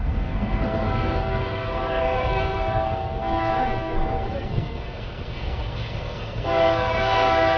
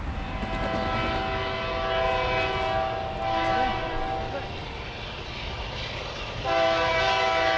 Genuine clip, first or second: second